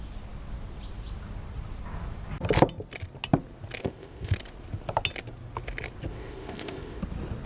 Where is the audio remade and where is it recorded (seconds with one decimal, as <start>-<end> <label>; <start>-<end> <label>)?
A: 0.0-3.8 recorded; 3.8-4.3 remade; 4.3-6.1 recorded; 6.1-7.0 remade; 7.0-7.5 recorded

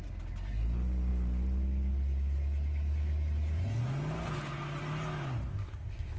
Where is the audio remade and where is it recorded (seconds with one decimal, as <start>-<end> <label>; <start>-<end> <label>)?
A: 0.0-5.5 recorded; 5.5-6.2 remade